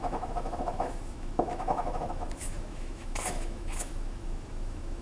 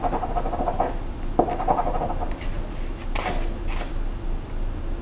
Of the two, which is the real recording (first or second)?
second